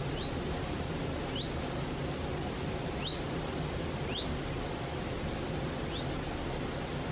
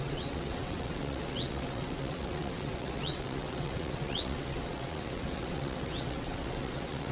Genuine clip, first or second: first